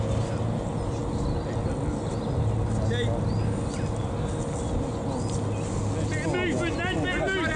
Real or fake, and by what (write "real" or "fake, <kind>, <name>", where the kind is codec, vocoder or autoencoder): real